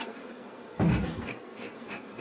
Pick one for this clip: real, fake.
fake